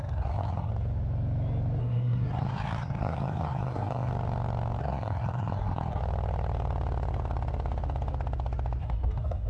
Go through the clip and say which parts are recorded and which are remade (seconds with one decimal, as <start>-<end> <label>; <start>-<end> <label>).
0.0-0.7 remade; 0.7-1.8 recorded; 1.8-4.1 remade; 4.1-4.8 recorded; 4.8-6.0 remade; 6.0-8.8 recorded; 8.8-9.5 remade

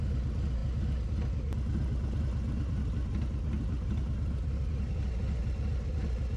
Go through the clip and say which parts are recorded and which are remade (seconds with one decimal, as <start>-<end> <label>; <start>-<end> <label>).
0.0-6.4 recorded

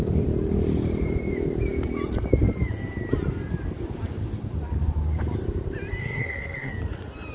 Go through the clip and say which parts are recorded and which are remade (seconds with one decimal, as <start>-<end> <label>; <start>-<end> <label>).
0.0-6.0 recorded; 6.0-6.7 remade; 6.7-7.3 recorded

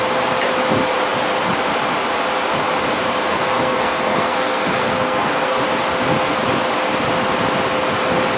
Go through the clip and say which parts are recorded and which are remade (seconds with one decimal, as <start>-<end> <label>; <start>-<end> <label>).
0.0-3.2 recorded; 3.2-5.6 remade; 5.6-8.4 recorded

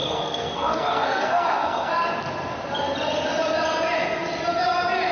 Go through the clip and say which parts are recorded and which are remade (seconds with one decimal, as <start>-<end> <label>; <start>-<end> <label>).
0.0-1.9 remade; 1.9-5.1 recorded

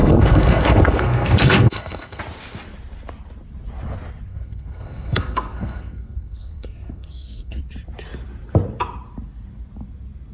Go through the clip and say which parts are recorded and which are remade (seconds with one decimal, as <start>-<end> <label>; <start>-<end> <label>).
0.0-2.2 remade; 2.2-4.3 recorded; 4.3-7.6 remade; 7.6-10.3 recorded

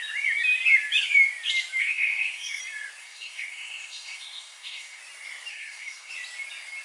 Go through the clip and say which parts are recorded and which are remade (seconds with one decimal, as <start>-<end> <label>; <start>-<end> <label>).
0.0-1.8 recorded; 1.8-2.6 remade; 2.6-3.0 recorded; 3.0-5.0 remade; 5.0-5.5 recorded; 5.5-6.1 remade; 6.1-6.8 recorded

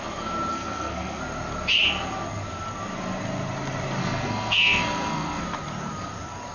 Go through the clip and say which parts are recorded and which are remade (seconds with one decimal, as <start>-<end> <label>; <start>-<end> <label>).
0.0-0.5 recorded; 0.5-1.2 remade; 1.2-4.0 recorded; 4.0-5.4 remade; 5.4-6.5 recorded